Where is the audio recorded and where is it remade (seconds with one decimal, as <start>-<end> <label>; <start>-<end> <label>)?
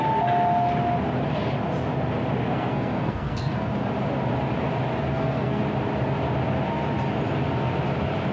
0.0-2.5 recorded; 2.5-3.7 remade; 3.7-5.1 recorded; 5.1-5.6 remade; 5.6-8.3 recorded